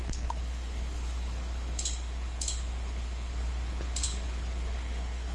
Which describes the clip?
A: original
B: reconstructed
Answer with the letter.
B